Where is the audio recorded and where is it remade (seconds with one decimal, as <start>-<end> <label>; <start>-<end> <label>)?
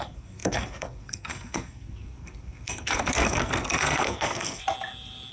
0.0-4.6 remade; 4.6-5.3 recorded